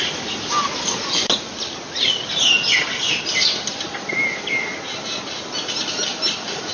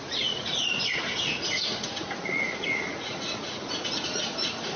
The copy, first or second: second